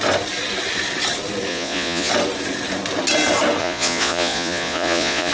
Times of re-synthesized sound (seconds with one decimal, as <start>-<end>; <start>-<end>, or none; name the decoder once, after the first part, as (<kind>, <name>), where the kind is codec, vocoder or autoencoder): 1.5-2.1 (vocoder, Vocos); 3.6-5.3